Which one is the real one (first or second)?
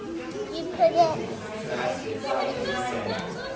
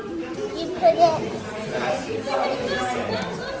first